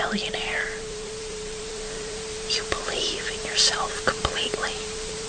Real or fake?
fake